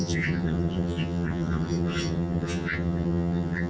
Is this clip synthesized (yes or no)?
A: yes